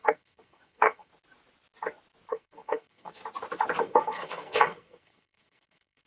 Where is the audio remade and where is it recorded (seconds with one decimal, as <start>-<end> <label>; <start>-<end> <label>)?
0.0-1.1 remade; 1.1-2.3 recorded; 2.3-3.2 remade; 3.2-3.8 recorded; 3.8-6.1 remade